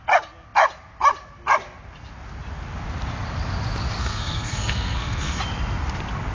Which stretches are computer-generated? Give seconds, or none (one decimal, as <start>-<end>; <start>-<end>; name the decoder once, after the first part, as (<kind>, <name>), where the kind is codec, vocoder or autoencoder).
4.0-5.4 (codec, SNAC)

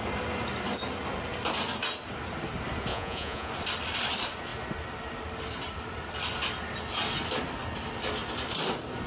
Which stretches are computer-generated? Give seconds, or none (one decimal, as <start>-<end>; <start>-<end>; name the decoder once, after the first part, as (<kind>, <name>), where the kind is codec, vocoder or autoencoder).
2.9-3.5 (vocoder, Vocos)

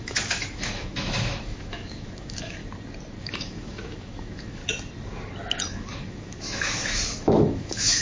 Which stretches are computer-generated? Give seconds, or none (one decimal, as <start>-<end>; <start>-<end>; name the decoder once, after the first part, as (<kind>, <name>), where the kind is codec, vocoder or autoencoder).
0.0-2.6 (autoencoder, DAC-VAE); 3.2-4.6; 5.7-8.0

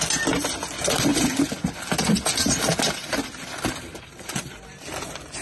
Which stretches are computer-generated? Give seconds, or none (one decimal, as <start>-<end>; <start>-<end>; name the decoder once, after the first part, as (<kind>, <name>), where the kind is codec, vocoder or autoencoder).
none

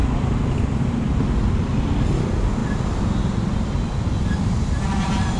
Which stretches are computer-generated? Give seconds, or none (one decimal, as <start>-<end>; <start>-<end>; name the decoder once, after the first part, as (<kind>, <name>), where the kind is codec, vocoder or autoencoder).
none

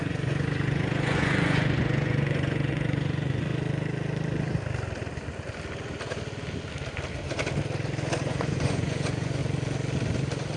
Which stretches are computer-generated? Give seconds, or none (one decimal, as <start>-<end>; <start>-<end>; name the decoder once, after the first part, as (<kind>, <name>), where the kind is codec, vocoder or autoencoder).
0.0-3.5 (vocoder, Vocos); 8.2-9.4